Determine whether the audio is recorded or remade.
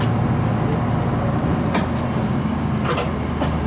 recorded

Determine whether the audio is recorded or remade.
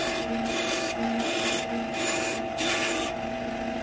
recorded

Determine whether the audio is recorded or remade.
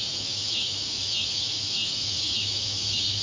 remade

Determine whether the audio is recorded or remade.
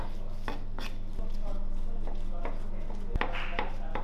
recorded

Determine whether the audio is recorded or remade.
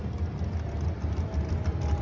recorded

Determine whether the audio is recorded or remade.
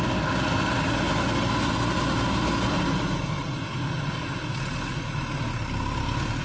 recorded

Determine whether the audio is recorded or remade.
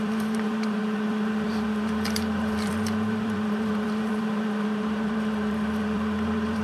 remade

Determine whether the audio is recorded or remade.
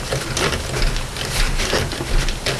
recorded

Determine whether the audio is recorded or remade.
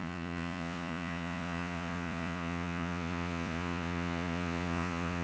remade